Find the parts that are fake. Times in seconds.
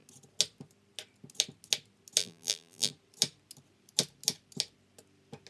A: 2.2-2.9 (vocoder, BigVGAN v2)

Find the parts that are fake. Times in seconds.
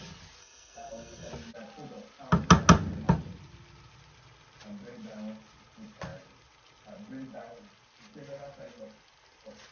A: 0.4-1.3 (codec, SNAC)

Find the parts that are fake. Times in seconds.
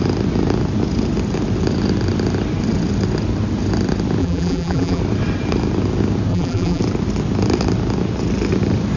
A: 4.2-5.0 (vocoder, BigVGAN v2); 6.3-6.8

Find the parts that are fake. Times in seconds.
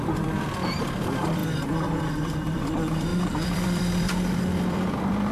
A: 0.0-5.3 (vocoder, BigVGAN v2)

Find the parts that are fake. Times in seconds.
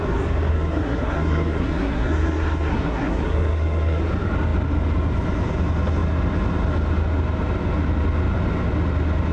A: 0.5-4.0 (codec, SNAC)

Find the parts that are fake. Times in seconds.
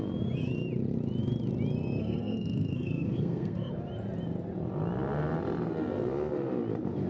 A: 2.0-3.7 (codec, SNAC)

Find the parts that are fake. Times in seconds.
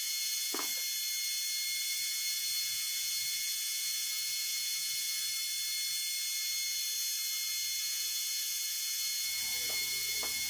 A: 0.0-0.7 (vocoder, Vocos); 1.8-5.3; 7.8-10.5